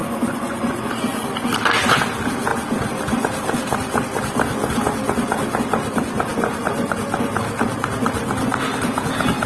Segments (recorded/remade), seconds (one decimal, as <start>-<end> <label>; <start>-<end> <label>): 0.0-1.0 remade; 1.0-9.5 recorded